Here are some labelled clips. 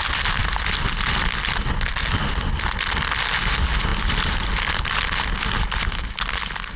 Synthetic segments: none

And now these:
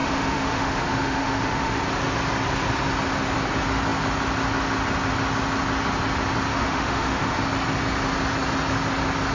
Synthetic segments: 0.0-1.8 (autoencoder, DAC-VAE); 6.5-7.4